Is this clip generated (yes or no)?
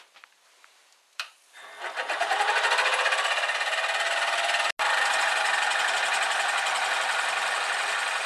no